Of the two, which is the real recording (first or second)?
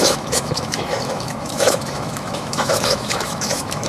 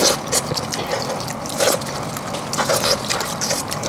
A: second